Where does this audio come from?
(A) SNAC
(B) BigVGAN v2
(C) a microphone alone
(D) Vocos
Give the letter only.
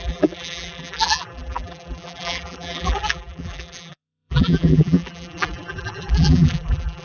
B